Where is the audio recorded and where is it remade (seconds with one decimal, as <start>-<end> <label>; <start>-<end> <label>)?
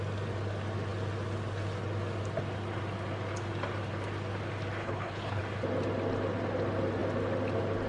0.0-4.8 recorded; 4.8-5.4 remade; 5.4-7.9 recorded